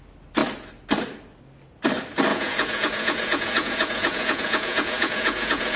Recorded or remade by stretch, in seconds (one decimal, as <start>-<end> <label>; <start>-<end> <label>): 0.0-2.3 recorded; 2.3-5.8 remade

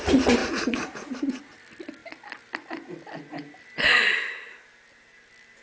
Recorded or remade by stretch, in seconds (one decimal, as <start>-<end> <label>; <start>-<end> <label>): 0.0-0.4 recorded; 0.4-1.4 remade; 1.4-5.6 recorded

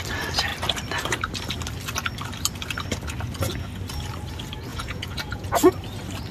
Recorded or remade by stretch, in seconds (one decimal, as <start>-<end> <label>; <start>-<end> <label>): 0.0-4.7 recorded; 4.7-5.7 remade; 5.7-6.3 recorded

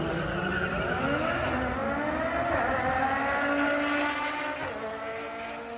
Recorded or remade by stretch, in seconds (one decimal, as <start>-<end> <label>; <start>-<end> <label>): 0.0-5.8 recorded

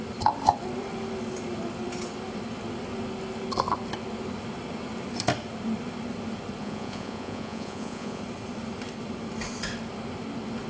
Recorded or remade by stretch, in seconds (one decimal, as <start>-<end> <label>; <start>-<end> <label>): 0.0-6.6 recorded; 6.6-8.2 remade; 8.2-10.7 recorded

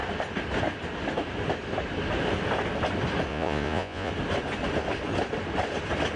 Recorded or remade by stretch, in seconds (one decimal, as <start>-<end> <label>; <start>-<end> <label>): 0.0-3.3 recorded; 3.3-4.1 remade; 4.1-6.2 recorded

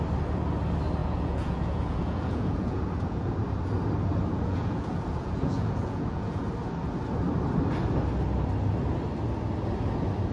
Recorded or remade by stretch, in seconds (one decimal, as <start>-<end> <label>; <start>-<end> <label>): 0.0-1.0 recorded; 1.0-3.3 remade; 3.3-4.3 recorded; 4.3-6.4 remade; 6.4-10.3 recorded

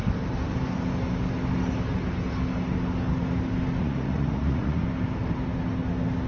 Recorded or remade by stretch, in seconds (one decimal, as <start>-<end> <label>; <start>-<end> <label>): 0.0-3.8 recorded; 3.8-4.8 remade; 4.8-6.3 recorded